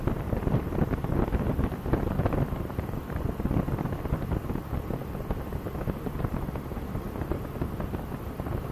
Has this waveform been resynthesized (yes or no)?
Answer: no